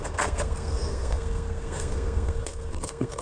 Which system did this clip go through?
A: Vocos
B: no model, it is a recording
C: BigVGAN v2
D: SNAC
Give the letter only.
D